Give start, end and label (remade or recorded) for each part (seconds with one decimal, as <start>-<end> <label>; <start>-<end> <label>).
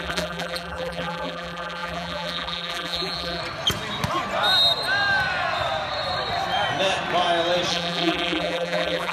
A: 0.0-3.4 remade; 3.4-7.7 recorded; 7.7-9.1 remade